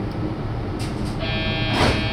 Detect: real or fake real